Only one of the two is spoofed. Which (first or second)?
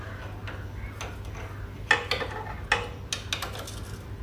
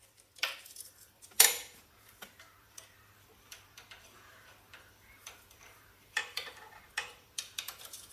second